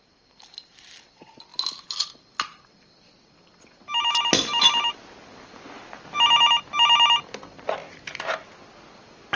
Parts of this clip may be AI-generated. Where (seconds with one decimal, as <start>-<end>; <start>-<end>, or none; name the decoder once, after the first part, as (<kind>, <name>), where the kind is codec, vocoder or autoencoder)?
none